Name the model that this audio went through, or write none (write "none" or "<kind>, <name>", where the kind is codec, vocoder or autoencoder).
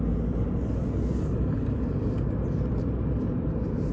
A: none